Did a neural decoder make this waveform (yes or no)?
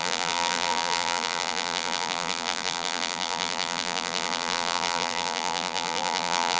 yes